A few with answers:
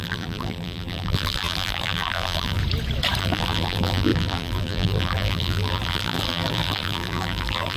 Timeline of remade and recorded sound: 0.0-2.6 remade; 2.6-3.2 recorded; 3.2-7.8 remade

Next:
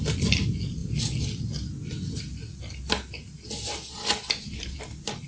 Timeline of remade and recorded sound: 0.0-5.3 recorded